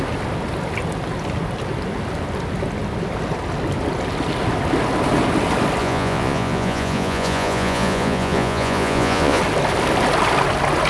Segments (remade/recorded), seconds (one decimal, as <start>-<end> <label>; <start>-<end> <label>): 0.0-5.8 recorded; 5.8-9.4 remade; 9.4-10.9 recorded